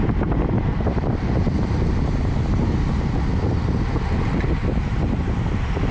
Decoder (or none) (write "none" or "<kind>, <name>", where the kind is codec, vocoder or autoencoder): none